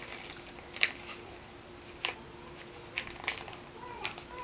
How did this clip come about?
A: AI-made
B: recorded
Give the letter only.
B